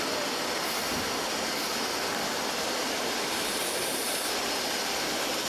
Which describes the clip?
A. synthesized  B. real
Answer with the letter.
B